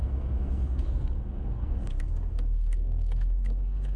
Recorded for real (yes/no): no